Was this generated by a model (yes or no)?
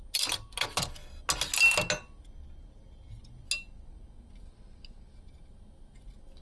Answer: no